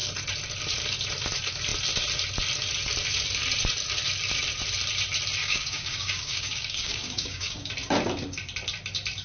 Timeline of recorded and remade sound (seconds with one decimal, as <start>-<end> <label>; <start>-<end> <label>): 0.0-5.4 recorded; 5.4-7.7 remade; 7.7-9.2 recorded

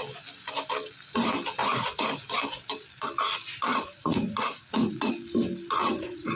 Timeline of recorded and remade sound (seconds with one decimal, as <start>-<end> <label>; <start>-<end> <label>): 0.0-1.6 recorded; 1.6-2.2 remade; 2.2-3.7 recorded; 3.7-5.1 remade; 5.1-5.8 recorded; 5.8-6.4 remade

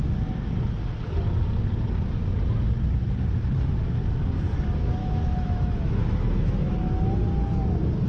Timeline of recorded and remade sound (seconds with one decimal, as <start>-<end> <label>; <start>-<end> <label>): 0.0-5.0 recorded; 5.0-6.7 remade; 6.7-8.1 recorded

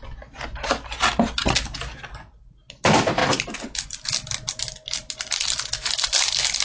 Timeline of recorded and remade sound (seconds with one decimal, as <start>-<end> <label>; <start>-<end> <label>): 0.0-6.6 recorded